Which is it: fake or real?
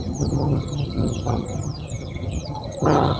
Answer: fake